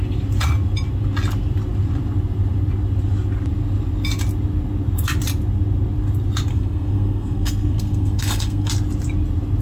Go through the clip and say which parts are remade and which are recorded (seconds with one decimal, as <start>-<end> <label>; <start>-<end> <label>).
0.0-6.5 recorded; 6.5-8.7 remade; 8.7-9.6 recorded